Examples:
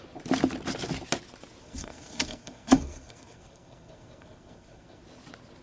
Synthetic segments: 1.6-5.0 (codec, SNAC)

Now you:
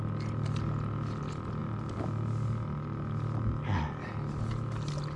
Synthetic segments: none